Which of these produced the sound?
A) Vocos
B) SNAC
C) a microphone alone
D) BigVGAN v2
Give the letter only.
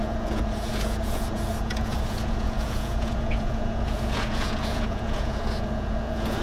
A